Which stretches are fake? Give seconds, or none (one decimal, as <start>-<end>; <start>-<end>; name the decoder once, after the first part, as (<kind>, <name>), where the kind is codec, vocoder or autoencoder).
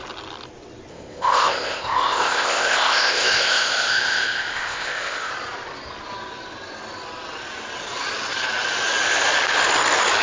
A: 0.9-5.3 (codec, ZipCodec)